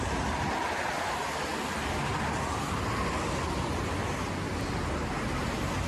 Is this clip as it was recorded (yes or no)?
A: yes